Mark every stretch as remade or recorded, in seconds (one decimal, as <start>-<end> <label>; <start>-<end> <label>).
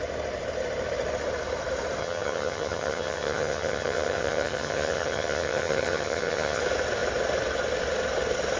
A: 0.0-2.0 recorded; 2.0-6.6 remade; 6.6-8.6 recorded